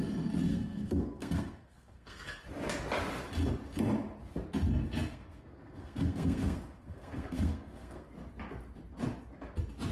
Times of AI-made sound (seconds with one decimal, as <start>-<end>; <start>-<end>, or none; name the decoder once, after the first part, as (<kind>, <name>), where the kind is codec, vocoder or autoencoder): 0.5-2.4 (codec, SNAC); 5.1-8.1